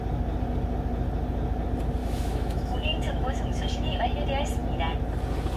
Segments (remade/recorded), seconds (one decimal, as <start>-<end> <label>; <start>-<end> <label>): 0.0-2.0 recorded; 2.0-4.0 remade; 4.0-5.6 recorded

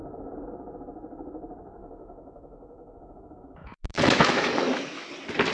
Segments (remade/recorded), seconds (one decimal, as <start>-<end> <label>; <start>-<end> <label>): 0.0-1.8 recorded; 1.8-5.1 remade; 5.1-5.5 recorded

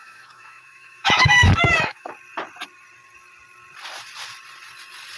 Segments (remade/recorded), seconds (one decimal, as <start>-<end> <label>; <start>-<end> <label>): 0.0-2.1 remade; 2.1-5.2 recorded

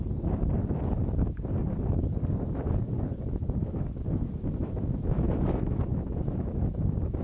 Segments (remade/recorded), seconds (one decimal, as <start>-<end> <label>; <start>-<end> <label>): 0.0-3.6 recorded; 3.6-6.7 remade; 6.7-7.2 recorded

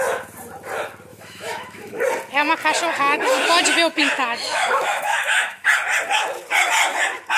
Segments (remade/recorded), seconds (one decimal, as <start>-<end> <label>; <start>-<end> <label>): 0.0-1.1 recorded; 1.1-2.0 remade; 2.0-3.9 recorded; 3.9-5.7 remade; 5.7-7.4 recorded

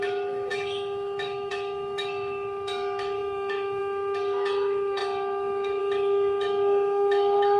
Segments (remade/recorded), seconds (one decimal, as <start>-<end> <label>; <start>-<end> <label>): 0.0-7.6 remade